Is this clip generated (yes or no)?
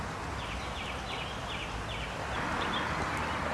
no